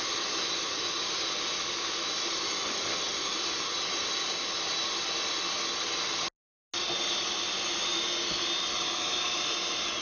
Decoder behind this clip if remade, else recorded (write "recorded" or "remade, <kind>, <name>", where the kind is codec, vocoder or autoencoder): recorded